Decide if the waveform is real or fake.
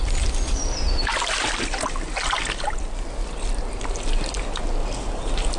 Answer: real